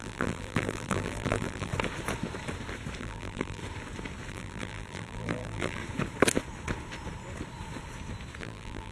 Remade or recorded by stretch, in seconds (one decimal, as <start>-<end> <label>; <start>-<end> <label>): 0.0-1.7 remade; 1.7-3.0 recorded; 3.0-3.6 remade; 3.6-4.3 recorded; 4.3-5.8 remade; 5.8-8.4 recorded; 8.4-8.9 remade